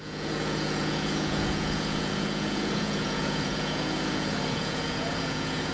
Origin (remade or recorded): remade